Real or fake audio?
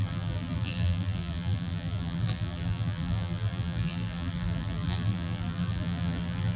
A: fake